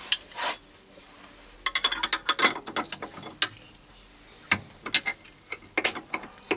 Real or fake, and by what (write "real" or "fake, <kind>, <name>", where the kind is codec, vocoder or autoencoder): real